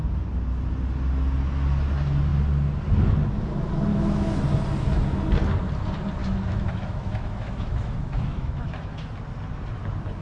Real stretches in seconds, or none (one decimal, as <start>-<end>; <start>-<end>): 0.0-3.9; 4.4-6.2; 9.1-10.2